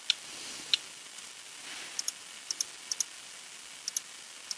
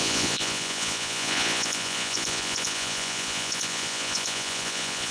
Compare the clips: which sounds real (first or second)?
first